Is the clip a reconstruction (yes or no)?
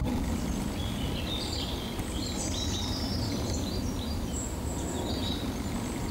yes